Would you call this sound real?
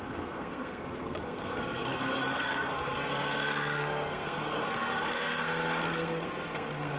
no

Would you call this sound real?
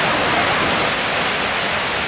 yes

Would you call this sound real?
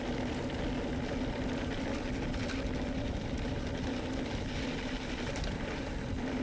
yes